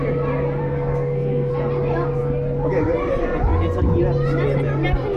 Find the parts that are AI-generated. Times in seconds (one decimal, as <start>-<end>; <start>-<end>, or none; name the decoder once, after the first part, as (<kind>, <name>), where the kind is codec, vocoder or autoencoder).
0.6-1.5 (codec, SNAC)